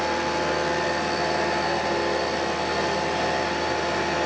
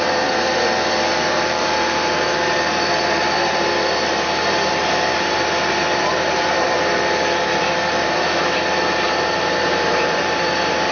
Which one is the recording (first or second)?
first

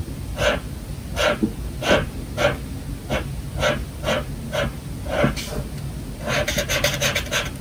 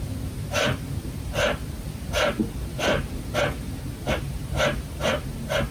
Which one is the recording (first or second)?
first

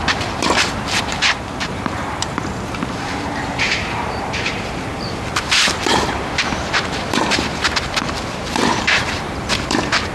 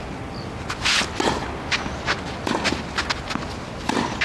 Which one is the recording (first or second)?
second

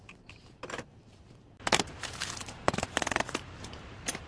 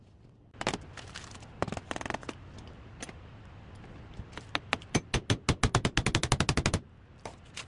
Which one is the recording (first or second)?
second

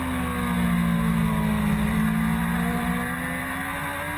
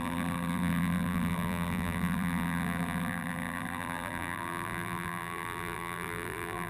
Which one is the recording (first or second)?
first